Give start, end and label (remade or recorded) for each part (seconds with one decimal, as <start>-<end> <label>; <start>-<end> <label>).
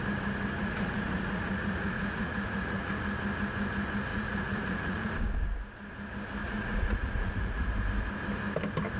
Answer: 0.0-0.6 recorded; 0.6-2.9 remade; 2.9-4.1 recorded; 4.1-5.1 remade; 5.1-6.4 recorded; 6.4-7.7 remade; 7.7-9.0 recorded